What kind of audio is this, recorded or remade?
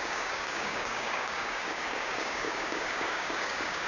remade